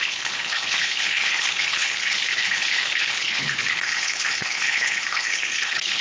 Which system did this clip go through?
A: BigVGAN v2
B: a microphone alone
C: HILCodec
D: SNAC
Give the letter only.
C